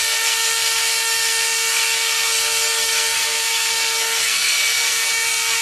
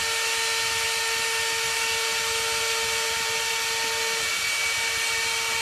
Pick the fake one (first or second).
first